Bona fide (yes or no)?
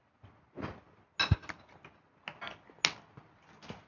yes